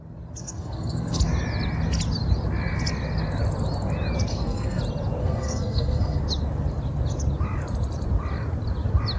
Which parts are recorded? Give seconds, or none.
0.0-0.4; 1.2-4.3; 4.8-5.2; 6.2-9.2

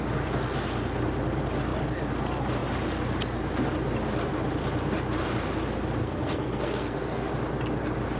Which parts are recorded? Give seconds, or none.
0.0-6.0; 7.3-8.2

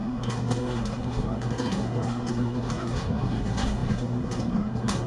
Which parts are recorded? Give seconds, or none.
none

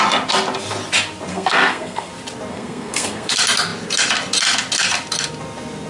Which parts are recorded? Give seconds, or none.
0.0-1.3; 2.1-2.5; 3.3-5.9

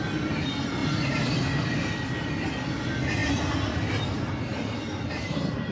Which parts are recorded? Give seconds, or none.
0.0-5.7

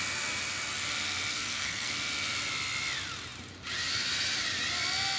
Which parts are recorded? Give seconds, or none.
0.0-1.3; 1.9-5.2

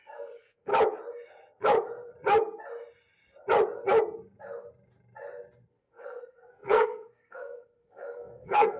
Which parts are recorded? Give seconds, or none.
0.7-5.8